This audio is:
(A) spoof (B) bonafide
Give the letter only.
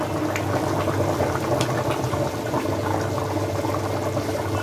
B